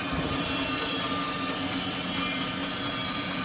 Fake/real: real